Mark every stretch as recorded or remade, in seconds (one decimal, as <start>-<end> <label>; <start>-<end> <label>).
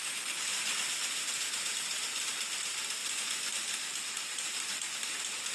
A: 0.0-5.5 recorded